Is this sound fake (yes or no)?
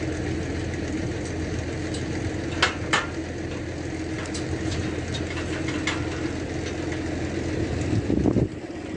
no